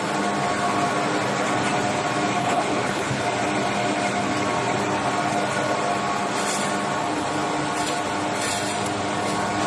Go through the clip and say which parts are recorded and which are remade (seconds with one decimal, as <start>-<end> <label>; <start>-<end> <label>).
0.0-2.4 recorded; 2.4-3.2 remade; 3.2-9.7 recorded